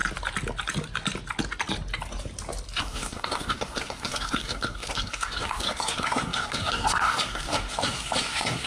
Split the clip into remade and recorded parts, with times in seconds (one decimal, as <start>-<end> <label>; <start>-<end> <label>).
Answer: 0.0-2.8 recorded; 2.8-8.7 remade